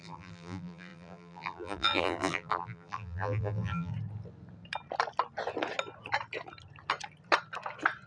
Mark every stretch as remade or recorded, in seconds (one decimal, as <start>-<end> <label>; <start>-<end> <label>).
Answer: 0.0-3.9 remade; 3.9-8.1 recorded